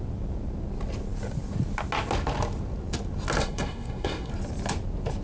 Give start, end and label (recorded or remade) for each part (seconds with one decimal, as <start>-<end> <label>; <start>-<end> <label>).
0.0-3.4 recorded; 3.4-4.3 remade; 4.3-5.2 recorded